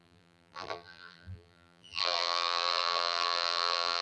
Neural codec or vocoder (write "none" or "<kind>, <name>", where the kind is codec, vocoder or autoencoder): vocoder, BigVGAN v2